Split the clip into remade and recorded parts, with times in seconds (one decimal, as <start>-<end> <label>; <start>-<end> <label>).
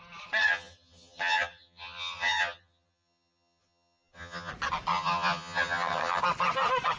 0.0-0.4 recorded; 0.4-4.5 remade; 4.5-4.9 recorded; 4.9-6.2 remade; 6.2-7.0 recorded